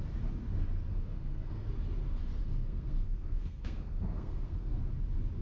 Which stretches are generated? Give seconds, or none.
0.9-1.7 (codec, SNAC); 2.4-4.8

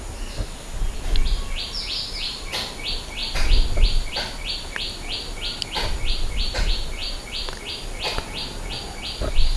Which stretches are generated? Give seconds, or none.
none

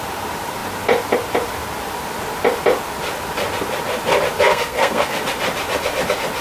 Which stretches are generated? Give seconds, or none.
4.5-5.2 (codec, SNAC)

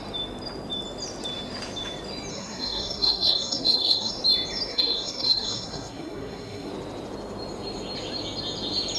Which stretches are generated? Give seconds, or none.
2.3-4.1 (codec, SNAC); 4.7-6.7